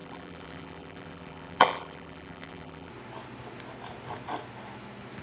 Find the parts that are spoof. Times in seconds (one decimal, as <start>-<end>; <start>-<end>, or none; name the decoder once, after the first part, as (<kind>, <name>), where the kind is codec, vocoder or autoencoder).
0.0-2.9 (vocoder, BigVGAN v2)